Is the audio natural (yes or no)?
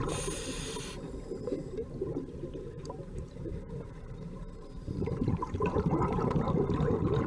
no